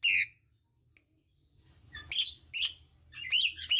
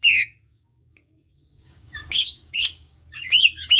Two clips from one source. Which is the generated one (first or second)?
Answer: second